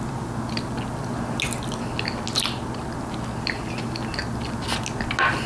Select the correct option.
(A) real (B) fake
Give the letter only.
A